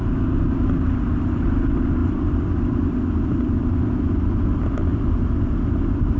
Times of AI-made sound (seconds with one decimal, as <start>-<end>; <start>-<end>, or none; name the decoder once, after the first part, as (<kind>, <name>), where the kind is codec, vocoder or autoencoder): none